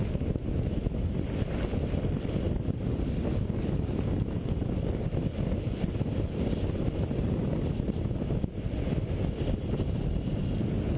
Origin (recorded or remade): recorded